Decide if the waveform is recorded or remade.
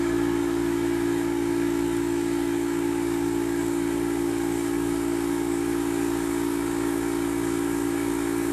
remade